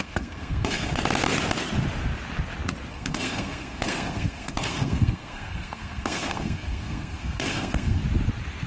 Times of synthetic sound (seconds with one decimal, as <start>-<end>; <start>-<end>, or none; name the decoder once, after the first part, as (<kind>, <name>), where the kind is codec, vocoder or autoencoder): 0.0-1.0 (codec, SNAC); 2.9-8.0